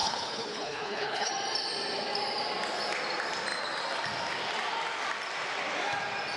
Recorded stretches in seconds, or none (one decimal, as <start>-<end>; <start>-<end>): 1.3-6.4